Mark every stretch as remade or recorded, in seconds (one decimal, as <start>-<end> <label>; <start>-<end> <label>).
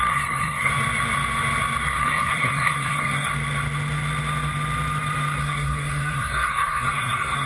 0.0-0.7 remade; 0.7-2.0 recorded; 2.0-3.3 remade; 3.3-5.4 recorded; 5.4-7.5 remade